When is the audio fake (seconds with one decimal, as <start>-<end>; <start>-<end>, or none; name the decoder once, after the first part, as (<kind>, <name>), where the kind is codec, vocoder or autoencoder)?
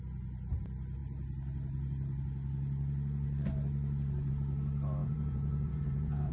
5.0-6.3 (vocoder, Vocos)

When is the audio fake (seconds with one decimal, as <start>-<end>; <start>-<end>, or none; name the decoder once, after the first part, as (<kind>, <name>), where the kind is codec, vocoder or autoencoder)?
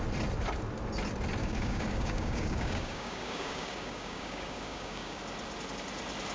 1.4-5.2 (codec, DAC)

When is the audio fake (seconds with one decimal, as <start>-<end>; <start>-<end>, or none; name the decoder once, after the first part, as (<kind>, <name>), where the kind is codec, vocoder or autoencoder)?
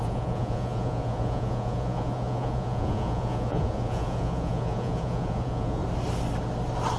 0.0-5.8 (vocoder, Vocos)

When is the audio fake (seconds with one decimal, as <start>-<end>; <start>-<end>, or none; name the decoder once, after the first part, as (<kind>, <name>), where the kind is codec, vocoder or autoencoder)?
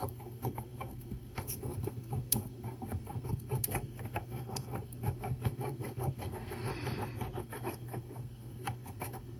0.0-6.7 (codec, SNAC); 7.4-9.4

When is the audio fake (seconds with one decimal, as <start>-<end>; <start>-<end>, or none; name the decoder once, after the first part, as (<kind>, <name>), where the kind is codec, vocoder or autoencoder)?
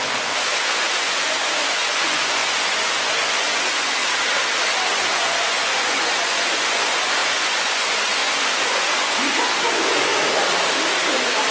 0.0-4.0 (vocoder, Vocos); 4.9-10.1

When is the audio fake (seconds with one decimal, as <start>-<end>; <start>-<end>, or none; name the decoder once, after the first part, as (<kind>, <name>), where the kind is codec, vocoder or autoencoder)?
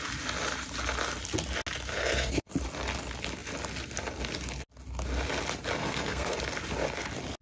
1.9-2.5 (codec, SNAC); 5.8-6.4